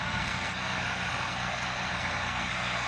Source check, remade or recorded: remade